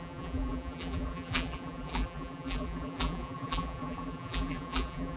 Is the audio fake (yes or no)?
yes